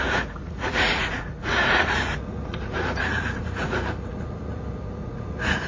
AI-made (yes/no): yes